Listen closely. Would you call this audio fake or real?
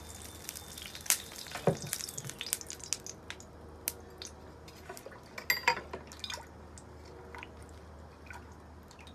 real